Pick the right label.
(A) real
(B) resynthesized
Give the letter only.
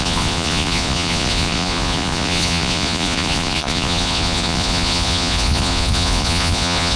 B